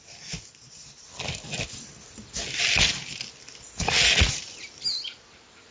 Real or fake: real